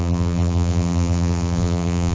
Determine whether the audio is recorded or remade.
remade